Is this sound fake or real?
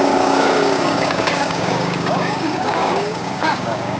fake